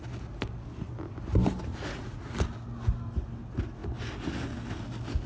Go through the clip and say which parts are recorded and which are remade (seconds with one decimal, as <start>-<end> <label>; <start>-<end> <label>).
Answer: 0.0-1.7 recorded; 1.7-2.3 remade; 2.3-5.3 recorded